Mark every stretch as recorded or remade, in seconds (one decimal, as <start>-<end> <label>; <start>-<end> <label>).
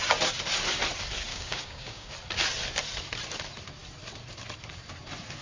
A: 0.0-1.3 recorded; 1.3-2.1 remade; 2.1-5.4 recorded